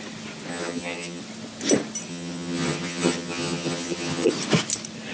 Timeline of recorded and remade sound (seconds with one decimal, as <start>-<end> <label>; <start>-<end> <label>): 0.0-0.5 recorded; 0.5-1.2 remade; 1.2-2.1 recorded; 2.1-4.3 remade; 4.3-5.1 recorded